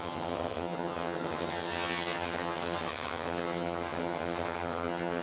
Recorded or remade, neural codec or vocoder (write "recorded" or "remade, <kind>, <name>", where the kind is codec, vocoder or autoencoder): remade, vocoder, HiFi-GAN